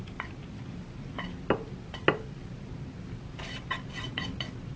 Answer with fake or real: real